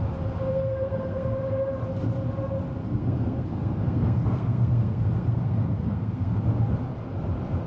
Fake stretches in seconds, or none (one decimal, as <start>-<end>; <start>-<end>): 0.5-1.4; 2.8-6.4